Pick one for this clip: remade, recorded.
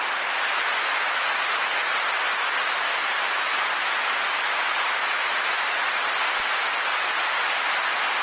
recorded